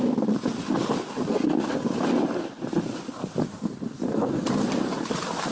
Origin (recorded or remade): recorded